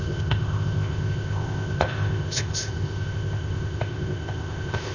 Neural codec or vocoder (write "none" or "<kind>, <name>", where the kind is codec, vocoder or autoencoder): codec, ZipCodec